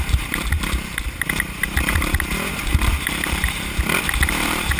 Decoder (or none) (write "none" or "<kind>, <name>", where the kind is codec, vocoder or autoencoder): vocoder, BigVGAN v2